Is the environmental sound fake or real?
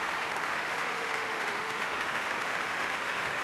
fake